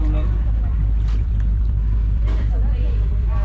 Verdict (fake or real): fake